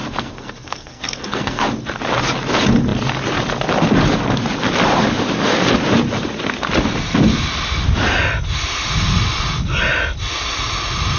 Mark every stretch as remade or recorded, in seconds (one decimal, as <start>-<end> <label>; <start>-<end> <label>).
0.0-1.6 remade; 1.6-11.2 recorded